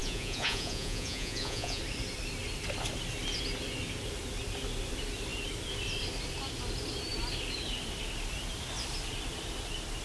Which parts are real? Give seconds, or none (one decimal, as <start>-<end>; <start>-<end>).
1.8-10.0